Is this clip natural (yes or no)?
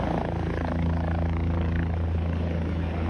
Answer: no